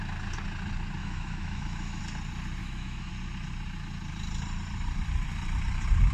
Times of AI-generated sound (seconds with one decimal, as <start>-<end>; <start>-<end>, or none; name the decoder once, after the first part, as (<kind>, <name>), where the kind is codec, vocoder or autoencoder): 1.0-2.0 (autoencoder, DAC-VAE); 2.6-3.1